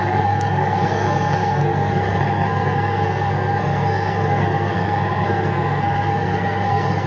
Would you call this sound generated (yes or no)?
yes